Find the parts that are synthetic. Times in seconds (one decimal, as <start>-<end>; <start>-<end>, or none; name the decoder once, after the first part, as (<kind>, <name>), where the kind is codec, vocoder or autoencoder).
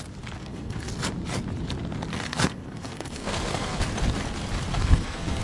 0.4-0.9 (codec, SNAC); 2.1-3.8; 4.7-5.4